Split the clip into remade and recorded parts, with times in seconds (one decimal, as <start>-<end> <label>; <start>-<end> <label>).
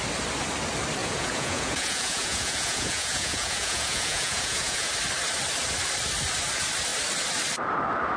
0.0-1.0 recorded; 1.0-4.9 remade; 4.9-8.2 recorded